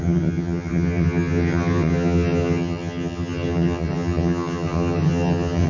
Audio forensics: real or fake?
fake